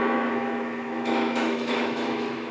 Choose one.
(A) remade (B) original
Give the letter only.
A